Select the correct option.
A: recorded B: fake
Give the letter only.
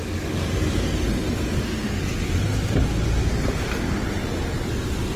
A